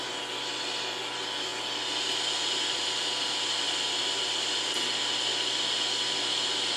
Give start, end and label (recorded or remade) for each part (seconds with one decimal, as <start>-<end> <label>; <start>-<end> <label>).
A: 0.0-6.8 recorded